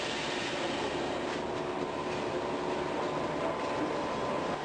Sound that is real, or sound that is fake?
real